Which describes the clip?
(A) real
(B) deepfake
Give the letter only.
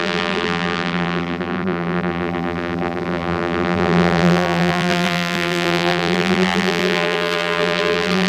B